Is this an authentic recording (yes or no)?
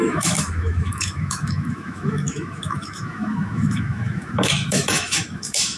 no